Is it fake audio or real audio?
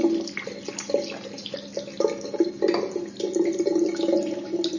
real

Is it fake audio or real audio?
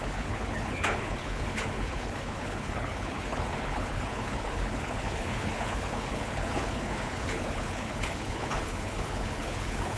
fake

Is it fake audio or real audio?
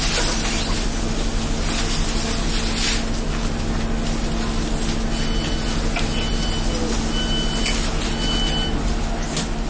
real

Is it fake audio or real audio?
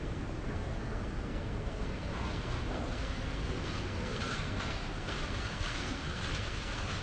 fake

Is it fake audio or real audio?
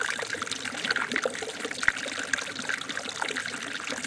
real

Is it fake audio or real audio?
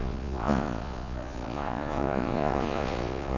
fake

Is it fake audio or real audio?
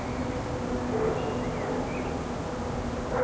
real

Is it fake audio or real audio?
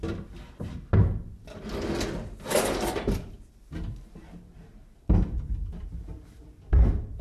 real